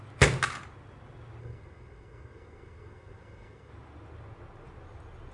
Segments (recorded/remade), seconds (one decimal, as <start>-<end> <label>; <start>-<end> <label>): 0.0-1.4 recorded; 1.4-3.7 remade; 3.7-5.3 recorded